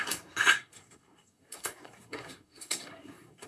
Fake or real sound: fake